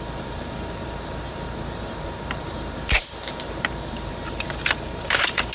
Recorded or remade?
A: remade